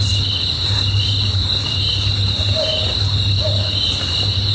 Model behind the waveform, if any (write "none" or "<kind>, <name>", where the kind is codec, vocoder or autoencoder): none